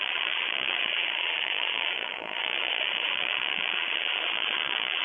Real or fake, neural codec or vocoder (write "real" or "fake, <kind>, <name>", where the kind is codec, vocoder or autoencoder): fake, vocoder, Vocos